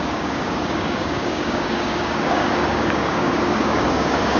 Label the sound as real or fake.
fake